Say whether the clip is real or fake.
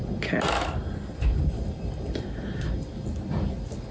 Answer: real